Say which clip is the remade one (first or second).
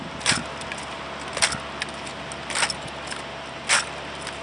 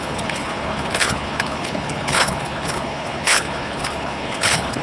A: second